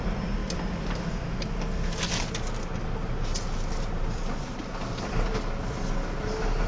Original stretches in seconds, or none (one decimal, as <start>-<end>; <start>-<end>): 0.0-6.7